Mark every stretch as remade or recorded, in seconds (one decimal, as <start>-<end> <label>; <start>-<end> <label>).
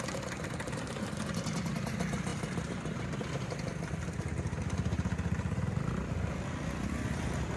0.0-7.6 recorded